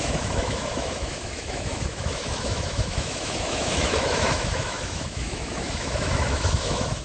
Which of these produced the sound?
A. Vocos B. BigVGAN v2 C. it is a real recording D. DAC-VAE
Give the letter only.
D